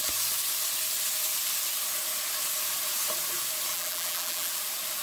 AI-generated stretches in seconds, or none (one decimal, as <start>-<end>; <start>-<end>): 3.7-4.5